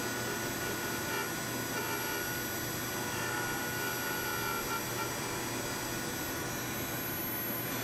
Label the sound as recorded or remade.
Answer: recorded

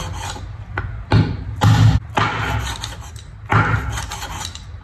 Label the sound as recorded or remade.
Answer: recorded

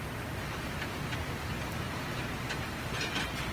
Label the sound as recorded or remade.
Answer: recorded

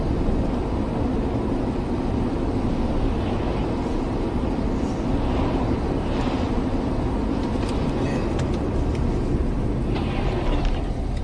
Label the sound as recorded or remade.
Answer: recorded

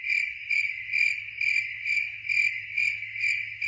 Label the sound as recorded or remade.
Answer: recorded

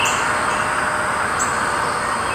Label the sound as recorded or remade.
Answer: recorded